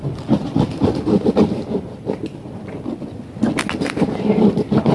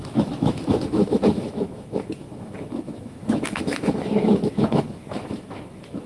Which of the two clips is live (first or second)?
first